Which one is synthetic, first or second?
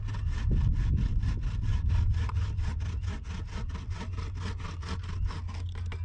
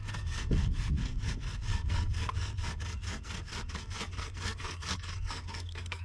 second